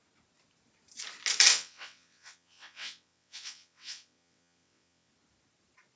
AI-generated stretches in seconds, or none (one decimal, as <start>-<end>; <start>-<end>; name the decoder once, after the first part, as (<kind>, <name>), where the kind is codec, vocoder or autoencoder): 1.5-5.1 (vocoder, WaveNeXt)